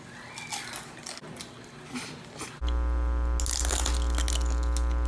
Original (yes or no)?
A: yes